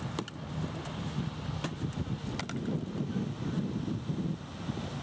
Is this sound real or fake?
real